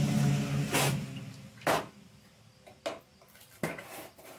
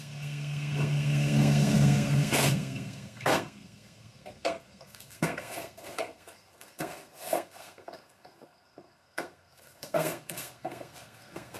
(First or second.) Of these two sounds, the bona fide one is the first